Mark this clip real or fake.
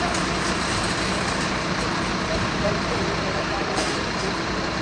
fake